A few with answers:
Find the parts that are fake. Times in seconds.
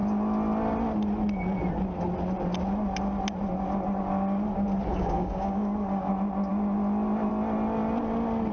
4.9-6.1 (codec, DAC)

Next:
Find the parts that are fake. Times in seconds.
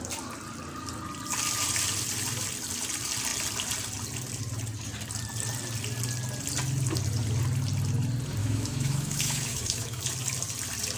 8.4-10.0 (autoencoder, DAC-VAE)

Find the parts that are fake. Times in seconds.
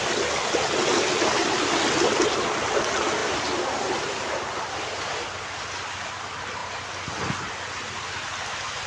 none